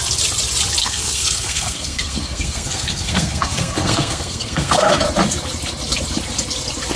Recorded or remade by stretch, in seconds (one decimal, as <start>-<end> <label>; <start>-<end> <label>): 0.0-0.8 recorded; 0.8-5.0 remade; 5.0-7.0 recorded